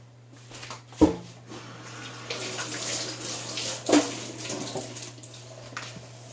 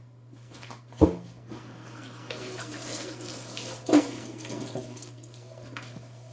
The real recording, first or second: first